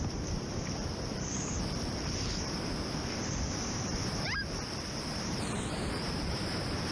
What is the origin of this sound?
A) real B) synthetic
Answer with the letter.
B